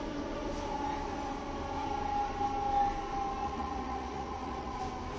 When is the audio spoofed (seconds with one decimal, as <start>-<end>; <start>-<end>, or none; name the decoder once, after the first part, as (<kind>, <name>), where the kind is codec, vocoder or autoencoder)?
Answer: 3.4-4.8 (vocoder, Vocos)